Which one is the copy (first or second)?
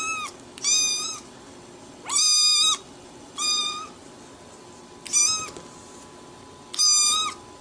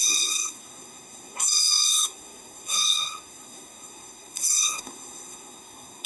second